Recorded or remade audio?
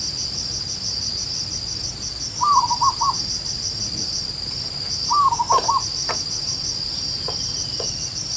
recorded